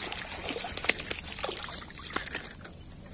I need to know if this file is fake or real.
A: real